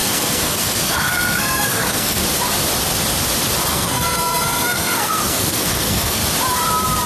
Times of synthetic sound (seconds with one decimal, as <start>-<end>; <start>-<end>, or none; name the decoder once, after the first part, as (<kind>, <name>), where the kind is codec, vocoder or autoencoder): 0.0-2.2 (codec, SNAC); 3.7-6.2